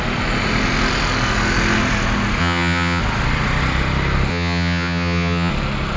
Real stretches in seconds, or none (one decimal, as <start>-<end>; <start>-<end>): 0.0-2.4; 3.0-4.3; 5.5-6.0